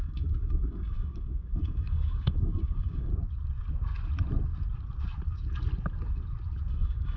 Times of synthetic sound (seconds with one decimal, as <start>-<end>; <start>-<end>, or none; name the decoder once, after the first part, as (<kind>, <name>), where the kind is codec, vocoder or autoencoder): 0.0-3.1 (codec, DAC); 6.7-7.2